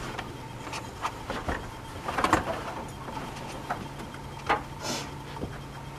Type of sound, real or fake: real